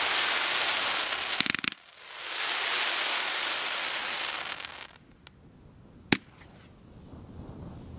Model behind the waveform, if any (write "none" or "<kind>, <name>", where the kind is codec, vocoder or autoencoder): none